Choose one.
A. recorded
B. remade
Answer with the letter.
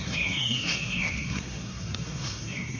B